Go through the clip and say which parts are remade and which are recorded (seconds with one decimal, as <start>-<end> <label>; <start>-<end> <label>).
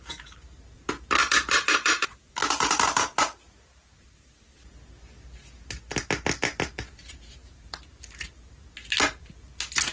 0.0-4.5 remade; 4.5-6.9 recorded; 6.9-9.9 remade